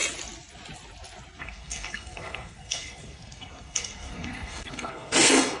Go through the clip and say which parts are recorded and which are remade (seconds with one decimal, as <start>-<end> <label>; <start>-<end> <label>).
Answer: 0.0-1.4 recorded; 1.4-5.6 remade